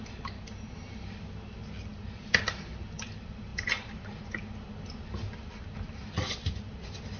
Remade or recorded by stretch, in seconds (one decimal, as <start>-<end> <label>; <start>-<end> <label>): 0.0-7.2 recorded